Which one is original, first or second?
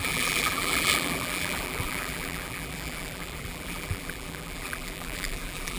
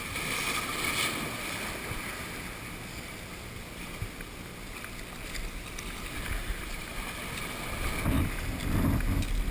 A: second